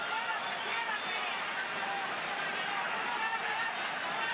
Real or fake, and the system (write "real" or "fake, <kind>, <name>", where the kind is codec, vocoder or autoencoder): real